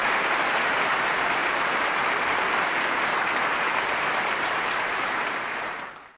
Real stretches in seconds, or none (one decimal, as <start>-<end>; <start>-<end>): none